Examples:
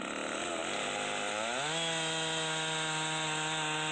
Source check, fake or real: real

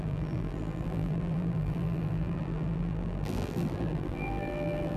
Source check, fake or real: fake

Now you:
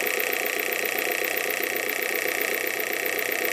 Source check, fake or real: real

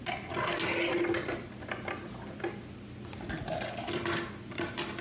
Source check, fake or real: real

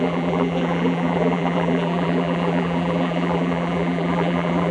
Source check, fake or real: fake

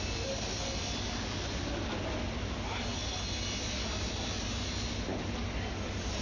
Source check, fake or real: real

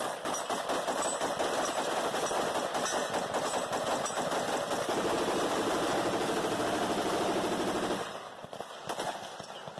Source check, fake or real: real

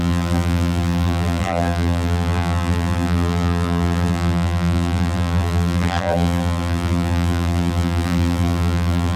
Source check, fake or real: fake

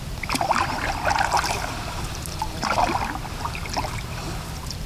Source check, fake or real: fake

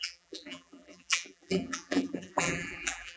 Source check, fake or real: fake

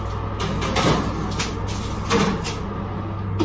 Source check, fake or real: real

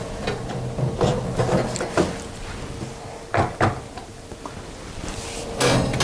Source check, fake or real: real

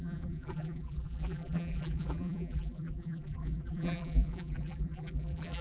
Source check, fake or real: fake